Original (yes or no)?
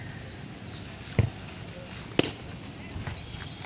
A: yes